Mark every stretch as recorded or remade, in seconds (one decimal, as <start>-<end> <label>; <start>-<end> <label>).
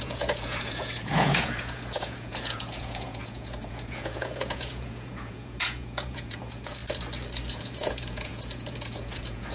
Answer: 0.0-6.8 remade; 6.8-7.5 recorded; 7.5-9.5 remade